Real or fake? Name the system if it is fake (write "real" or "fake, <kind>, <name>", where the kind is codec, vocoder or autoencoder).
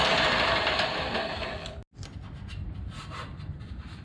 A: real